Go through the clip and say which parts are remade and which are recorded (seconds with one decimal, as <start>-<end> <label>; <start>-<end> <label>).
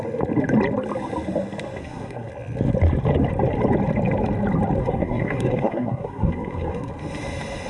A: 0.0-1.8 recorded; 1.8-2.3 remade; 2.3-4.8 recorded; 4.8-6.9 remade; 6.9-7.7 recorded